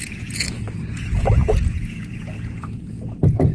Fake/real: fake